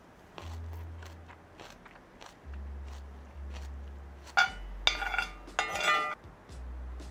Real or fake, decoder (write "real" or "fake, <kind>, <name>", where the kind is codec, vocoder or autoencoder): real